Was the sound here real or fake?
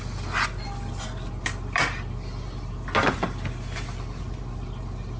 real